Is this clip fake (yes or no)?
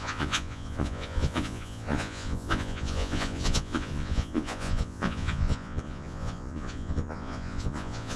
yes